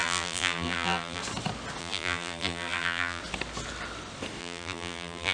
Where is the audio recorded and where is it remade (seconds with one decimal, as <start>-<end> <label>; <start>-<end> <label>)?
0.0-1.2 remade; 1.2-1.8 recorded; 1.8-3.2 remade; 3.2-4.4 recorded; 4.4-5.3 remade